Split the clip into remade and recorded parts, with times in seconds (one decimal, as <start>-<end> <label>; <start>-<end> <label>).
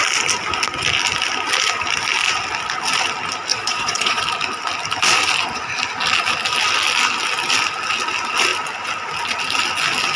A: 0.0-3.5 recorded; 3.5-4.2 remade; 4.2-10.2 recorded